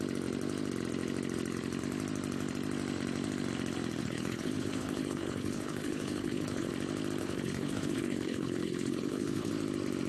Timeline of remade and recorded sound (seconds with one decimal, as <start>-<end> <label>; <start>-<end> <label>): 0.0-4.0 recorded; 4.0-6.7 remade; 6.7-7.2 recorded; 7.2-9.5 remade; 9.5-10.1 recorded